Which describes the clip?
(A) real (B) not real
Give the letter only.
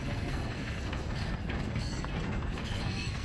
B